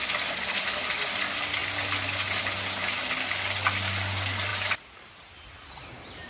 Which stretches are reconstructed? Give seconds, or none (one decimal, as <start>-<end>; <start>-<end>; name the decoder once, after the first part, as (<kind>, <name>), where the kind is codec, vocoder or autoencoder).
none